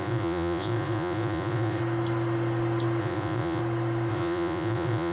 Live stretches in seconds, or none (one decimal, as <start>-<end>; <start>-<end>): 1.8-3.0; 3.6-4.1